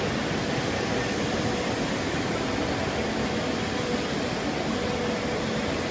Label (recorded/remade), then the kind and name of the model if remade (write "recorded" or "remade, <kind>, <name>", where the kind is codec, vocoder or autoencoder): recorded